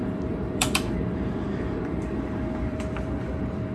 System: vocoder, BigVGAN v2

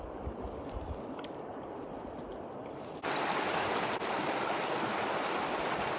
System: none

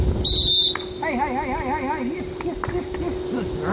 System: none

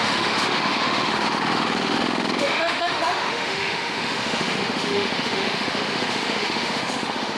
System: autoencoder, DAC-VAE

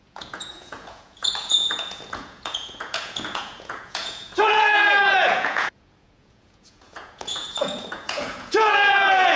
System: vocoder, Vocos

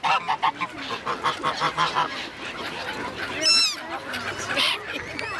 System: none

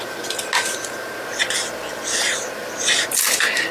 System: none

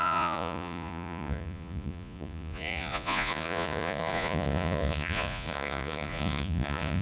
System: vocoder, Vocos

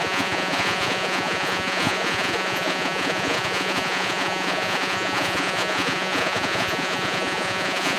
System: vocoder, Vocos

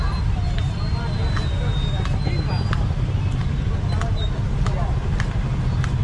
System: none